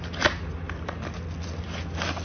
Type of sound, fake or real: real